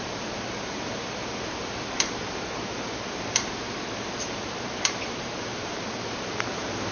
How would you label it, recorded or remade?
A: remade